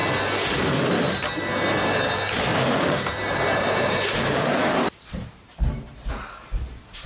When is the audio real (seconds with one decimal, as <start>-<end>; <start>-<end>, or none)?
0.0-2.5; 6.1-7.1